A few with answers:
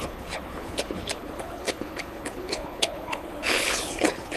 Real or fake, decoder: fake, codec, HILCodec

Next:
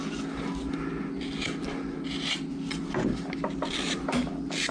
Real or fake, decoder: real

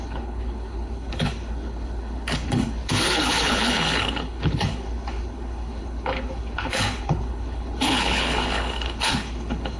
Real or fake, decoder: fake, codec, HILCodec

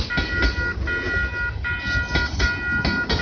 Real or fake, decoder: real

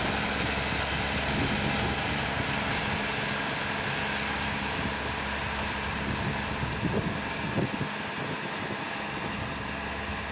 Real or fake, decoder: real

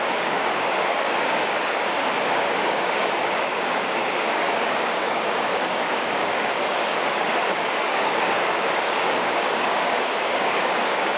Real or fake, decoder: fake, codec, DAC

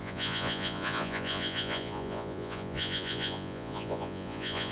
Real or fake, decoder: fake, vocoder, Vocos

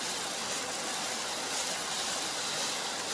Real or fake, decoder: real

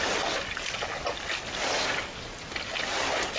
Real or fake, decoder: real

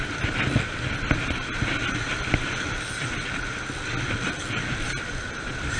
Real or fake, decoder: real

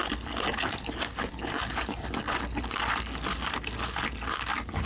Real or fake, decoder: real